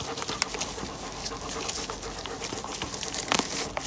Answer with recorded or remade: recorded